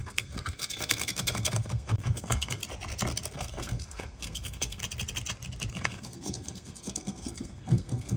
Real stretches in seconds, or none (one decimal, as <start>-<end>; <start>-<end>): 2.6-3.3; 4.8-5.7